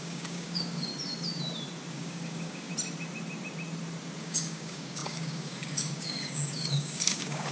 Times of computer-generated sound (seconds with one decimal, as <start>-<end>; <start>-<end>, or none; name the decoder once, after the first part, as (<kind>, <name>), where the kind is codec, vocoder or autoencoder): 0.0-0.9 (codec, DAC); 1.9-2.7; 4.2-7.5